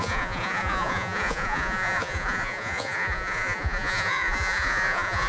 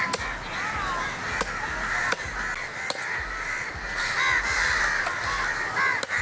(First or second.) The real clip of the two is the second